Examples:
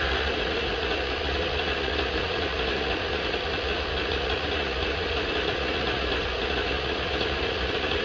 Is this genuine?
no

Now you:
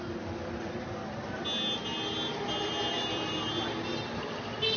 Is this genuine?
yes